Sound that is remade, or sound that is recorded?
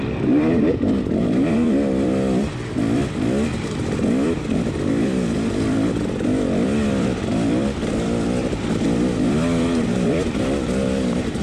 remade